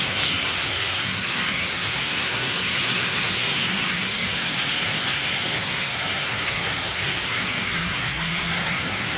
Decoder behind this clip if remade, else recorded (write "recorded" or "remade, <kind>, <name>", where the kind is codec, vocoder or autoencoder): remade, codec, SNAC